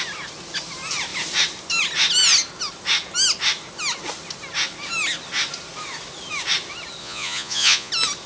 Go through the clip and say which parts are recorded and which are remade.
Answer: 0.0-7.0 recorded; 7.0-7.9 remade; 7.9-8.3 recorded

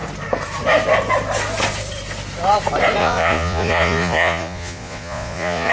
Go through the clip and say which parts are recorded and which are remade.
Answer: 0.0-3.0 recorded; 3.0-5.7 remade

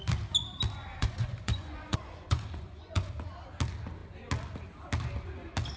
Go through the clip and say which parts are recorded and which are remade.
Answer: 0.0-0.8 recorded; 0.8-3.1 remade; 3.1-5.8 recorded

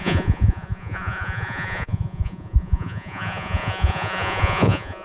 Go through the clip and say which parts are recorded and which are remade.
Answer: 0.0-5.0 remade